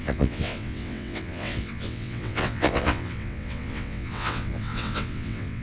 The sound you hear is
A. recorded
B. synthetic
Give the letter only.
B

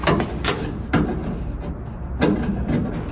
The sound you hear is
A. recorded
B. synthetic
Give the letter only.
A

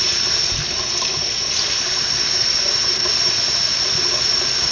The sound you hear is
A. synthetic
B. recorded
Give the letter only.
B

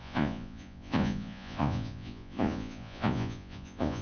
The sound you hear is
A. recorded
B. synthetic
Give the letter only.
B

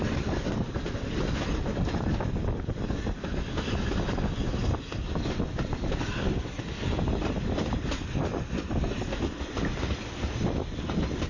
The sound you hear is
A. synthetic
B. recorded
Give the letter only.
B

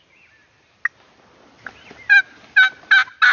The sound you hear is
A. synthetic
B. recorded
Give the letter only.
B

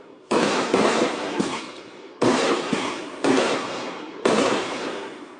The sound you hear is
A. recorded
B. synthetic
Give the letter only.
B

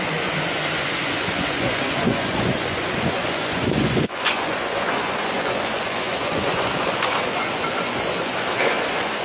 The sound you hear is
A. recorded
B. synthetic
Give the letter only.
B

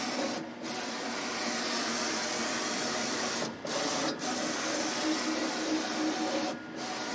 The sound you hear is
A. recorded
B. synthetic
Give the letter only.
A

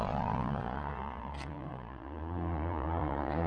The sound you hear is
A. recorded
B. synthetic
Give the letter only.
B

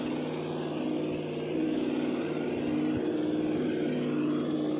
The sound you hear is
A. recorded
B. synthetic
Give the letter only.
A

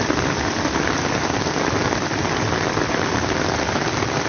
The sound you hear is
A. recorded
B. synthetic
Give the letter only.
A